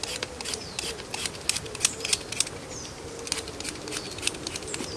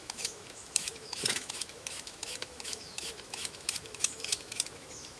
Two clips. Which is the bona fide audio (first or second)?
first